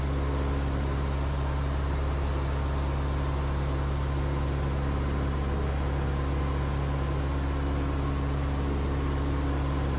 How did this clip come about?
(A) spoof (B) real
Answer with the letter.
B